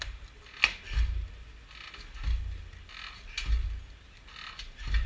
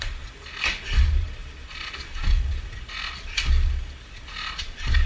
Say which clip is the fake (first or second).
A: second